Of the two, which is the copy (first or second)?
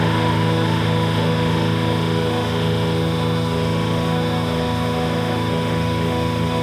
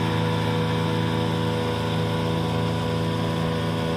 first